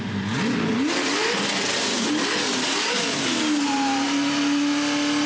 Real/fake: real